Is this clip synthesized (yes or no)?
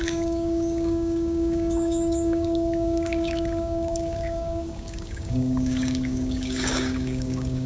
yes